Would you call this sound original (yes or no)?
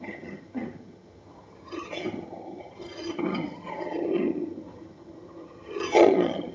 no